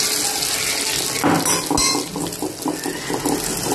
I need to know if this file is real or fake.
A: real